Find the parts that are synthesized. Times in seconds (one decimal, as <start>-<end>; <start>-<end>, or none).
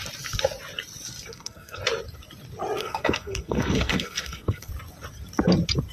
1.3-1.8; 2.8-4.7